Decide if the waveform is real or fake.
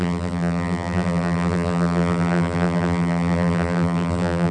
fake